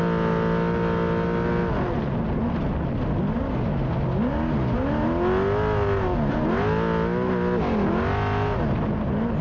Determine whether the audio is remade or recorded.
recorded